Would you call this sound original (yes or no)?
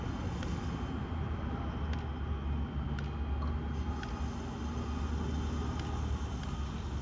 yes